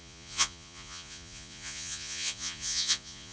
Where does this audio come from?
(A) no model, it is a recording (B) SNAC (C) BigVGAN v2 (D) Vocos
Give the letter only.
D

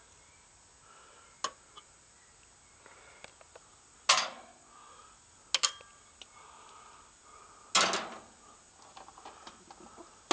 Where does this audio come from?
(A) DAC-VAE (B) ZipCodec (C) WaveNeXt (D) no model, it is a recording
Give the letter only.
D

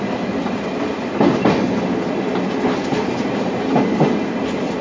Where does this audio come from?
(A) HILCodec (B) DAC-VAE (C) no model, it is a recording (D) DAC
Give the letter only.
C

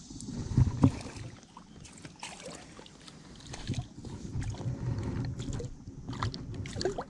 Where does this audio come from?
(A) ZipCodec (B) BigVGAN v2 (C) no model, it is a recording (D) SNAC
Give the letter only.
C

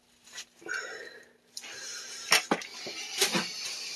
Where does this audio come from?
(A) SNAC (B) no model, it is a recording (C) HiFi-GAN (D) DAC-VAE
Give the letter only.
B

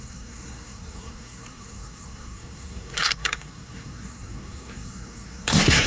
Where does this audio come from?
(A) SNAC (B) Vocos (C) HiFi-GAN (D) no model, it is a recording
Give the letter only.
A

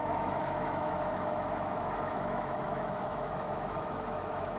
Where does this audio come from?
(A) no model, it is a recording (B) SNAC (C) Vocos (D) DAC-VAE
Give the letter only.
D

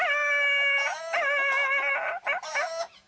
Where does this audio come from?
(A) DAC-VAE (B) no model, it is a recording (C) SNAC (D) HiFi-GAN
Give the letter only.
B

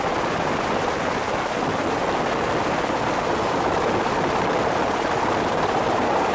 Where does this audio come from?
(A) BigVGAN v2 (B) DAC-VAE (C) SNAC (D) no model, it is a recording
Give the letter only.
D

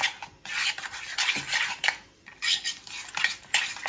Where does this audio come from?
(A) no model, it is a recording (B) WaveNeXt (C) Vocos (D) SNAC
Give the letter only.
A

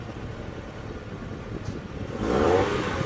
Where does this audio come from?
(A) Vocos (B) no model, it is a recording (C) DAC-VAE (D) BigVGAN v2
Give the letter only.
B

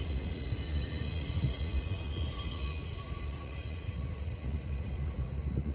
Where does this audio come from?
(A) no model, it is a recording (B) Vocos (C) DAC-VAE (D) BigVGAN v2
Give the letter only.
B